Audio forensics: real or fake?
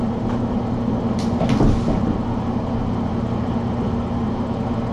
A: real